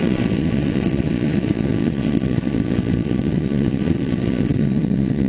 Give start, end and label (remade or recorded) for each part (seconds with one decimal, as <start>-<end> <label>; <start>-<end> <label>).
0.0-5.3 remade